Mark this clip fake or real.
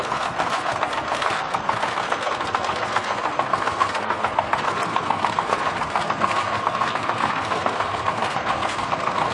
fake